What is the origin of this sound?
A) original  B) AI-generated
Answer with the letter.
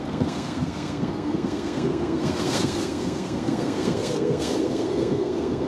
B